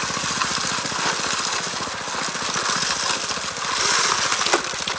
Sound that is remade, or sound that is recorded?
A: recorded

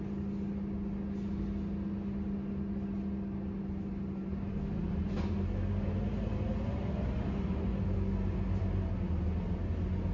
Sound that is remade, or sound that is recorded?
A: recorded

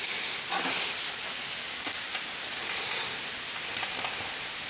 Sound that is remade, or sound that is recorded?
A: recorded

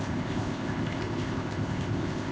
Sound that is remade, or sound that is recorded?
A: remade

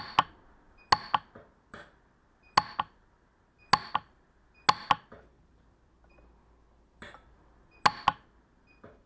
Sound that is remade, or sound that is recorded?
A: recorded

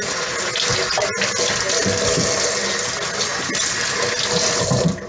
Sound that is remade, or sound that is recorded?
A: recorded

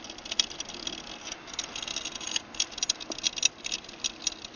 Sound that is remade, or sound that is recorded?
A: recorded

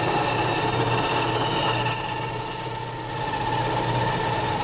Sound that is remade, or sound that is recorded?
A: recorded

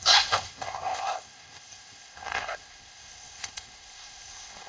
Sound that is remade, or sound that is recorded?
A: remade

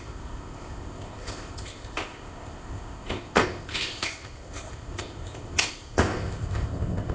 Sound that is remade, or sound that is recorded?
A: remade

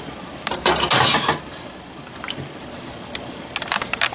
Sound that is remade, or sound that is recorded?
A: recorded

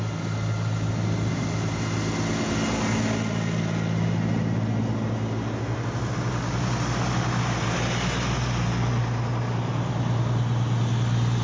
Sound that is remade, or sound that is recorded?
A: recorded